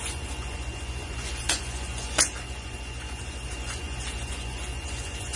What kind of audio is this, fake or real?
fake